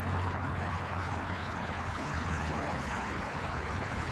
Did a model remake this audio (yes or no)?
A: yes